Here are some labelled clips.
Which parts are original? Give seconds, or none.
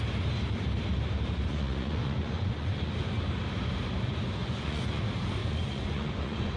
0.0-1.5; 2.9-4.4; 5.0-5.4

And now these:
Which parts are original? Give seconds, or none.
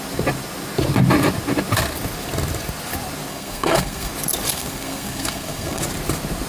0.0-3.3; 4.1-4.5; 5.8-6.5